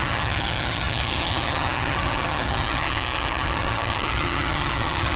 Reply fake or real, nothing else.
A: fake